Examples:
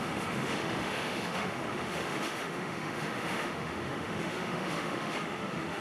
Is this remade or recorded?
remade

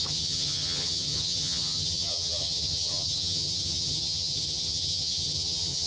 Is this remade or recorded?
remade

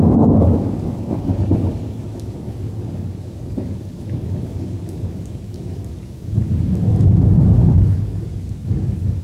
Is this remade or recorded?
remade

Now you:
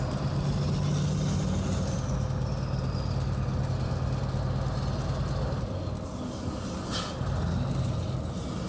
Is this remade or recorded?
recorded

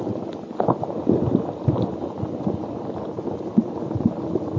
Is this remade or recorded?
recorded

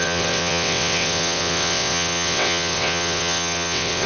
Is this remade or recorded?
remade